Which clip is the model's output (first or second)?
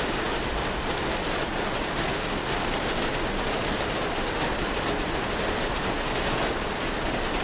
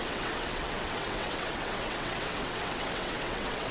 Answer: second